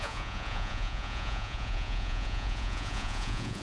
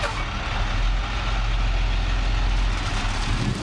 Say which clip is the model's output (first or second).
first